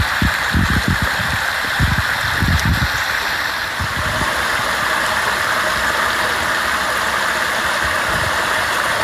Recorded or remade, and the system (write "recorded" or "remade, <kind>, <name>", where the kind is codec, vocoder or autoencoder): recorded